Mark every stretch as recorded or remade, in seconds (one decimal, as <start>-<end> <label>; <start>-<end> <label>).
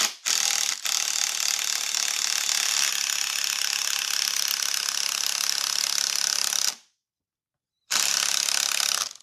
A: 0.0-6.4 recorded; 6.4-7.5 remade; 7.5-9.2 recorded